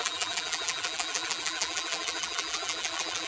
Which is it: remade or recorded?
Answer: remade